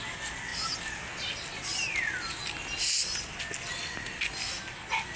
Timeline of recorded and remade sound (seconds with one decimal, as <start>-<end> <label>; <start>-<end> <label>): 0.0-5.2 recorded